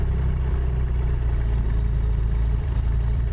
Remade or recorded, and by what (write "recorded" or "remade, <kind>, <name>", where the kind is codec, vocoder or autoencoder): remade, vocoder, BigVGAN v2